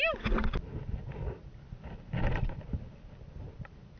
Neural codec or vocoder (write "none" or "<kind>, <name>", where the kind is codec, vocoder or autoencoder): none